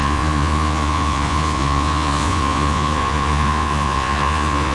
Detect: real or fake fake